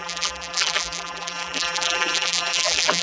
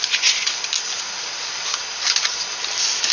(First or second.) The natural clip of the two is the second